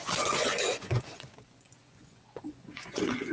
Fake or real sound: fake